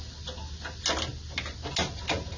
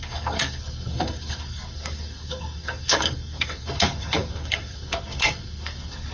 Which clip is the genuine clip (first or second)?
first